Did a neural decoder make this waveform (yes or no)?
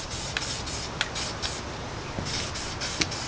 no